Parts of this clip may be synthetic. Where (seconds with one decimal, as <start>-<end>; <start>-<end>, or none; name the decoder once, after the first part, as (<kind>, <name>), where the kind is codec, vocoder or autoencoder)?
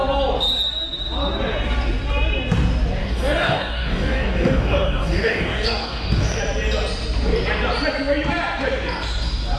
3.0-6.4 (codec, DAC)